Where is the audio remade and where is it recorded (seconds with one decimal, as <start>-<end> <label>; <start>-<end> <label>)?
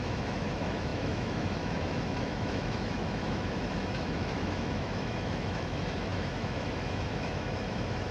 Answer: 0.0-8.1 remade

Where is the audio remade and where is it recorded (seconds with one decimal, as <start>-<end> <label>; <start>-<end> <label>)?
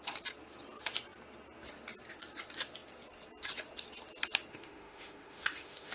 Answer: 0.0-4.5 recorded; 4.5-5.9 remade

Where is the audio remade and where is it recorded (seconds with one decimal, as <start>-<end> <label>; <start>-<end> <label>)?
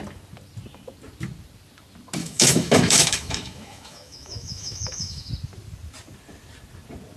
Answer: 0.0-2.2 recorded; 2.2-5.3 remade; 5.3-7.2 recorded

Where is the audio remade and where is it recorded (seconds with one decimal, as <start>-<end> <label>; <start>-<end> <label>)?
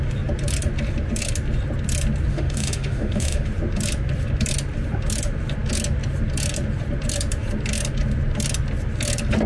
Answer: 0.0-2.3 recorded; 2.3-3.5 remade; 3.5-9.5 recorded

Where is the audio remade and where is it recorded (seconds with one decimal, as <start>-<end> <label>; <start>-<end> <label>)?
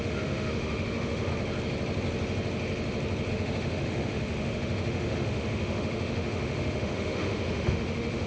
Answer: 0.0-1.3 remade; 1.3-3.3 recorded; 3.3-8.3 remade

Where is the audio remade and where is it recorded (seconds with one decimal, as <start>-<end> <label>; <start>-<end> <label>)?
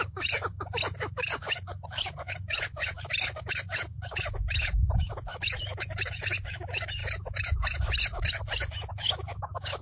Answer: 0.0-9.8 remade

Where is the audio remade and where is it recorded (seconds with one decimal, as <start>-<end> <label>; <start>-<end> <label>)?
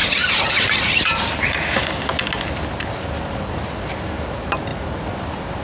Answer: 0.0-5.6 recorded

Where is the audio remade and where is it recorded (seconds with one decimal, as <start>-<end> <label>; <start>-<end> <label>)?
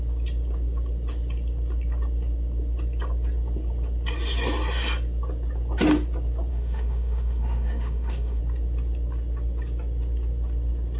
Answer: 0.0-6.5 recorded; 6.5-8.4 remade; 8.4-11.0 recorded